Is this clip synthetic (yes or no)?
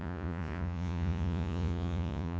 yes